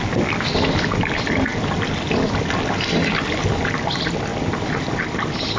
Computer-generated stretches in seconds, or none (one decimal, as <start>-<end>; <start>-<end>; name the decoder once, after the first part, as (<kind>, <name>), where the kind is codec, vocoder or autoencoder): none